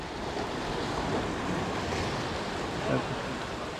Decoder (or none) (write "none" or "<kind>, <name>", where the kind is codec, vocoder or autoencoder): none